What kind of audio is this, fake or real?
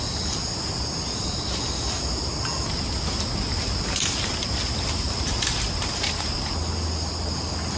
real